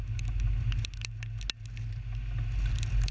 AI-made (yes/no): no